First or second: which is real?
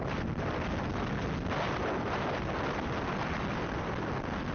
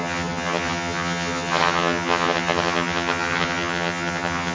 first